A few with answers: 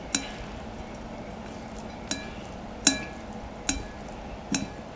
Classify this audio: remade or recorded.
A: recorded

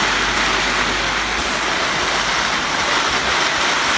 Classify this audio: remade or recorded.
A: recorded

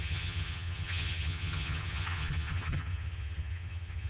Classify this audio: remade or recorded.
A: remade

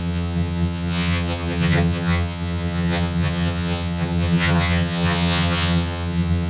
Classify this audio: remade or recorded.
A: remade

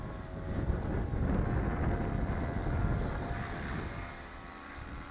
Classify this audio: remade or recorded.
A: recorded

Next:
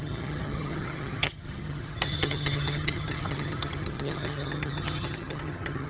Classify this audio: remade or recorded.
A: remade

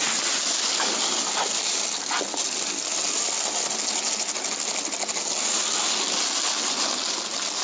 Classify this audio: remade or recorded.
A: recorded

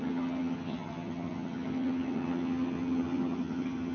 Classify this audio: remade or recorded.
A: remade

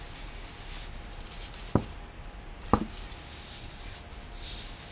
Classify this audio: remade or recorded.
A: recorded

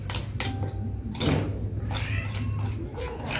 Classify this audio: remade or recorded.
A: recorded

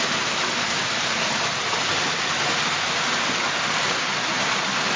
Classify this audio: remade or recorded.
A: recorded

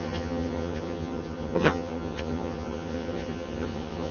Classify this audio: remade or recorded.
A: remade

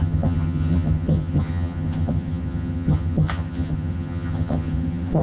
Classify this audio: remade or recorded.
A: remade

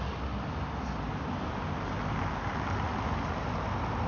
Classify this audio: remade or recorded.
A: recorded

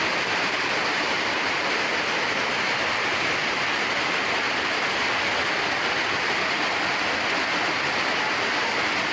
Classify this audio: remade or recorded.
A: recorded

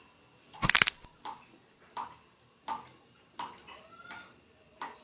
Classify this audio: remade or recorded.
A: recorded